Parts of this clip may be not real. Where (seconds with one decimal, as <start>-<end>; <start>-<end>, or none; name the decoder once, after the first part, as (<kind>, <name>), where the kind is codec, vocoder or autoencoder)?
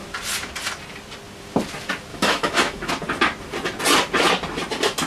2.1-2.9 (autoencoder, DAC-VAE)